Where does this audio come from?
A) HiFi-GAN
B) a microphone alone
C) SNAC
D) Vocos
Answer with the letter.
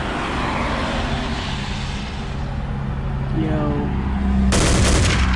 B